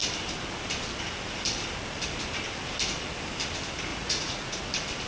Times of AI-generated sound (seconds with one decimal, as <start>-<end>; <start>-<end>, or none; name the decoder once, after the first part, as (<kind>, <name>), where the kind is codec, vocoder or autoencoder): 3.9-4.6 (vocoder, Vocos)